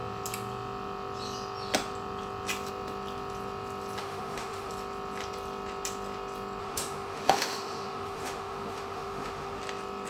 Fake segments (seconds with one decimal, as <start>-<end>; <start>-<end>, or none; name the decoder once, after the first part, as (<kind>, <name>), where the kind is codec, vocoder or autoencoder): 4.0-4.7 (autoencoder, DAC-VAE); 6.6-9.6